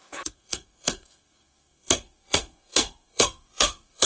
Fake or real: fake